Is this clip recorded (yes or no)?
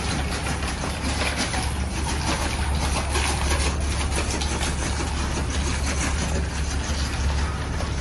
yes